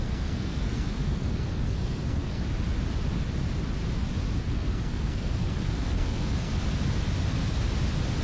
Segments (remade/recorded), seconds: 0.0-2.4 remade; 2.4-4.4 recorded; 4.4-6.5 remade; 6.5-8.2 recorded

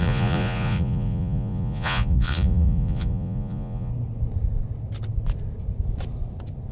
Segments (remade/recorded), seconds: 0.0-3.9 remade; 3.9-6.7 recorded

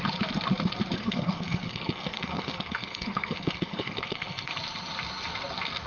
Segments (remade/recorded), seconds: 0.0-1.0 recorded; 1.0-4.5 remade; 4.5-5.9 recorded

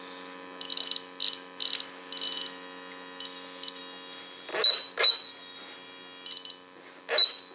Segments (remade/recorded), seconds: 0.0-7.5 recorded

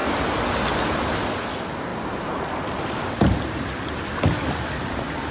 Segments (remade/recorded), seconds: 0.0-5.3 recorded

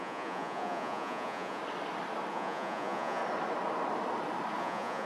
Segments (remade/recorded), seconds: 0.0-1.6 remade; 1.6-2.3 recorded; 2.3-3.2 remade; 3.2-4.6 recorded; 4.6-5.1 remade